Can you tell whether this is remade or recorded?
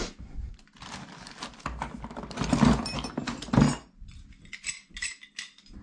recorded